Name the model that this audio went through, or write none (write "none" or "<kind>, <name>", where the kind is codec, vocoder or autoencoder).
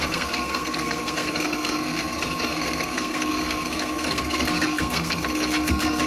codec, SNAC